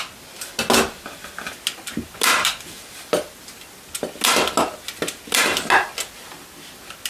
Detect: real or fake real